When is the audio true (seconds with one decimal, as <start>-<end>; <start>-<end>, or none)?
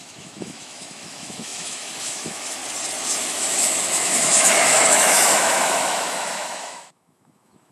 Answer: 2.6-3.2